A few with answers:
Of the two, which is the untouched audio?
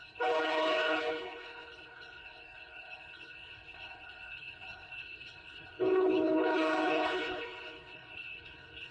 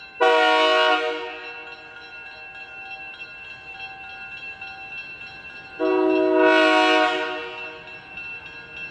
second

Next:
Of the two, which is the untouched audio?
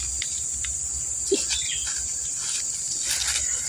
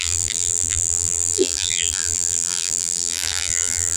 first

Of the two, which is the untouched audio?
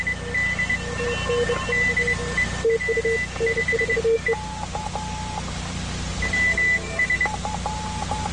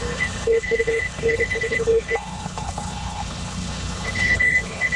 first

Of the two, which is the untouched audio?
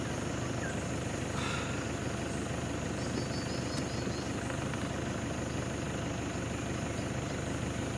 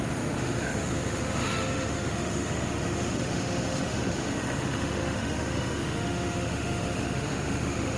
first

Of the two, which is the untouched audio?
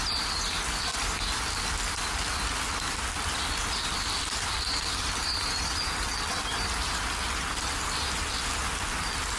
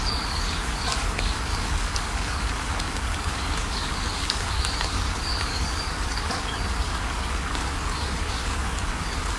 first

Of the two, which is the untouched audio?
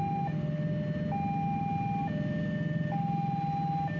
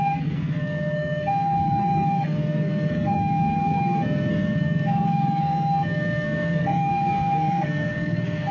first